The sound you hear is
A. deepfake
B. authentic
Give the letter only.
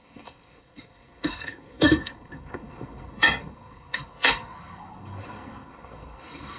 A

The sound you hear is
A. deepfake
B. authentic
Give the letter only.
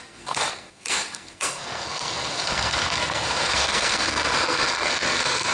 A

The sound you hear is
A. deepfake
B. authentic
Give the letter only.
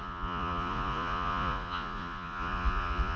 A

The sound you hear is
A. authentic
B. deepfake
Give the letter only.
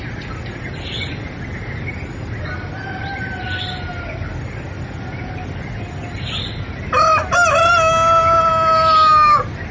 A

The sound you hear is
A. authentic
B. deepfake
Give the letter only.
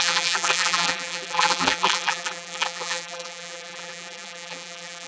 B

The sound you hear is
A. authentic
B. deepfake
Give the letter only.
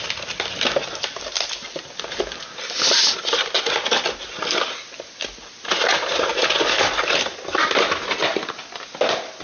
A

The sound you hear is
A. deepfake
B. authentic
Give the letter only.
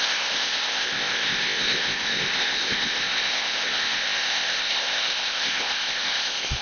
A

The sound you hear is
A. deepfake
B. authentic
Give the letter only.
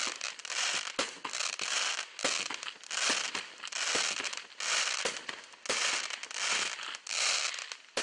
B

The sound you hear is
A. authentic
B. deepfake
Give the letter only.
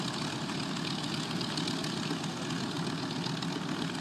A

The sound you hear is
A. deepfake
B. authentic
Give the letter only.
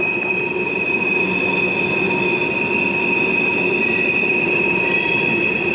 B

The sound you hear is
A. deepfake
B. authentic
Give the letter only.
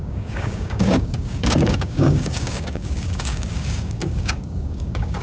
A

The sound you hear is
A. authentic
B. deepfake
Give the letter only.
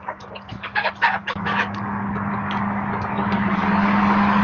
B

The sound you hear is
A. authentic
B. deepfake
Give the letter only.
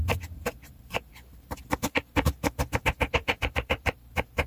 B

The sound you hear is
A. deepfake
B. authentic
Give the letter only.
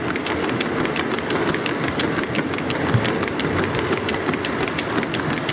B